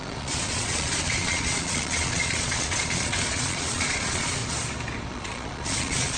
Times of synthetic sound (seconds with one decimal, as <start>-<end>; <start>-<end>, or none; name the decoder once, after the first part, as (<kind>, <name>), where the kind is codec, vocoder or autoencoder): 0.0-4.4 (vocoder, Vocos); 5.1-6.2

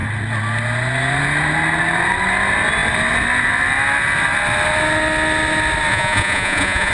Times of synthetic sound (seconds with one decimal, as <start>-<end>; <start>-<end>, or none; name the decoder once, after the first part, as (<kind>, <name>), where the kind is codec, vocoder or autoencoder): 5.9-6.9 (vocoder, Vocos)